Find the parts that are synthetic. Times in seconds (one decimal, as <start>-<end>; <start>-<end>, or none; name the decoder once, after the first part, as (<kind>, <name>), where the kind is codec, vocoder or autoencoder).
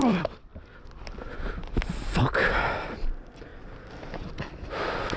0.0-0.5 (vocoder, BigVGAN v2); 2.9-5.2